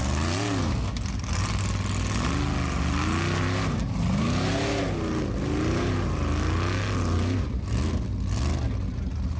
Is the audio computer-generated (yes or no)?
no